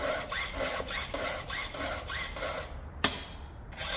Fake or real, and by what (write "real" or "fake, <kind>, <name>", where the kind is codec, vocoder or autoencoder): real